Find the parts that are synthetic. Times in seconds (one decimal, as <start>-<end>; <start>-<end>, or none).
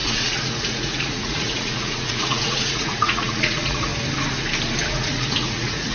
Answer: 0.0-3.9; 4.9-5.9